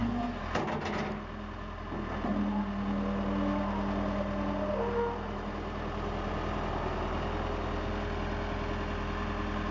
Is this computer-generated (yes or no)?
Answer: no